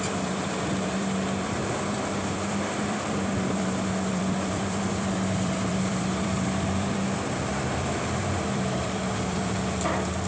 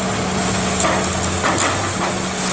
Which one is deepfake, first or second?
first